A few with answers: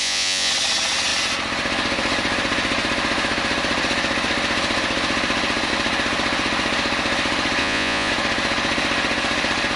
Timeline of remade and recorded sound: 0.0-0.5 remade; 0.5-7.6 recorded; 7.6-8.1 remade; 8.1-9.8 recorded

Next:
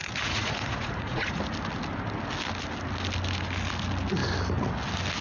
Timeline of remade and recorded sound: 0.0-1.4 remade; 1.4-5.2 recorded

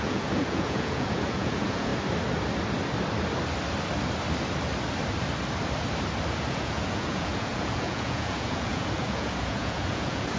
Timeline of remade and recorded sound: 0.0-1.9 remade; 1.9-6.5 recorded; 6.5-10.4 remade

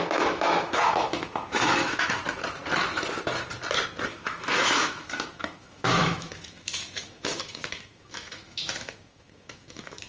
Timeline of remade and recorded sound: 0.0-2.2 remade; 2.2-4.1 recorded; 4.1-10.1 remade

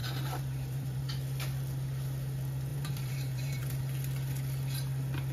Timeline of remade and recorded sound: 0.0-1.0 remade; 1.0-2.7 recorded; 2.7-3.8 remade; 3.8-5.3 recorded